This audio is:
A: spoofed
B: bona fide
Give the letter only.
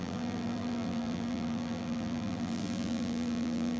A